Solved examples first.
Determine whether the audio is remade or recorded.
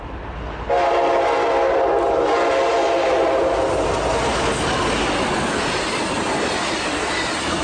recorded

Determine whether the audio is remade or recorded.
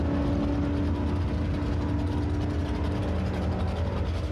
recorded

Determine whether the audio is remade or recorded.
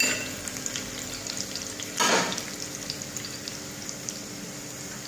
recorded